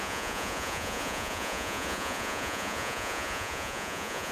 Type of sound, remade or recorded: remade